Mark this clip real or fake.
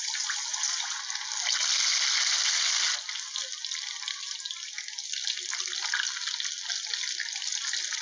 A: real